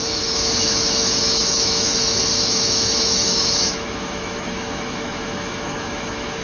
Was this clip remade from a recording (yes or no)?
yes